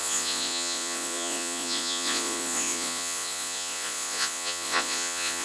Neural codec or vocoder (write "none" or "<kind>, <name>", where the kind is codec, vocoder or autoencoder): vocoder, Vocos